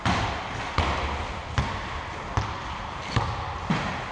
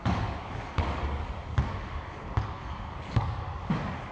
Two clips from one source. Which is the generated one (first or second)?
second